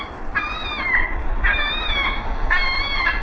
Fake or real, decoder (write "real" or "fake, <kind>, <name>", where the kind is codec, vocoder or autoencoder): real